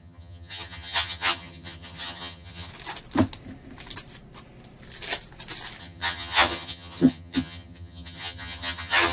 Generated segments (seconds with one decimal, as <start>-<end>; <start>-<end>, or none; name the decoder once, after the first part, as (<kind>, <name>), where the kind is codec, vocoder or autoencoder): 0.0-2.7 (vocoder, HiFi-GAN); 5.8-9.1